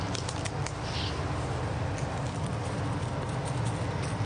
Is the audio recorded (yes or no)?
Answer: yes